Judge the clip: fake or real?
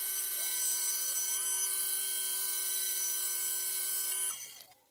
real